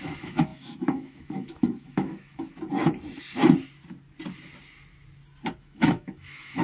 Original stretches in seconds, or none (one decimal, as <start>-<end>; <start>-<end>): 2.5-5.6